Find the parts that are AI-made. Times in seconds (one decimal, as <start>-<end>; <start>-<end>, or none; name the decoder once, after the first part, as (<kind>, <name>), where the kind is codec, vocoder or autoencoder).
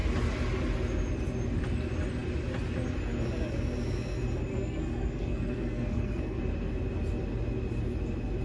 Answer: 4.5-6.4 (codec, SNAC)